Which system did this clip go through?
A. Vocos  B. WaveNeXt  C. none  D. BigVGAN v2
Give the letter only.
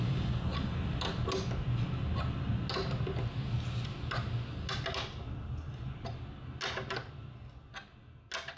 C